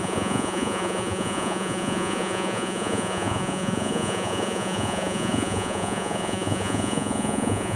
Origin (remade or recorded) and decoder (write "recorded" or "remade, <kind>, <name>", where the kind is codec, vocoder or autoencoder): remade, vocoder, Vocos